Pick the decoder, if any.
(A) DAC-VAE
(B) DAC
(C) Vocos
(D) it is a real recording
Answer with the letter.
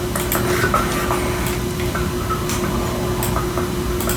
D